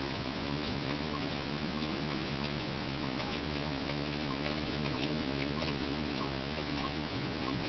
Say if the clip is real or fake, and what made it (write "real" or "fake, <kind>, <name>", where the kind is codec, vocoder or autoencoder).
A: fake, vocoder, Vocos